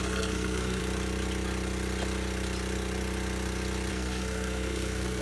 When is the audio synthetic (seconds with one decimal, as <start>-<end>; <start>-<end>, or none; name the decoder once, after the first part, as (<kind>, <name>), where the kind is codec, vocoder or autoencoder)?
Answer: 0.0-0.8 (codec, SNAC); 3.9-5.2